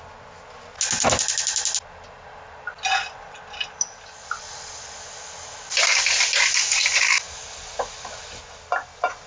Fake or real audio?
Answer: real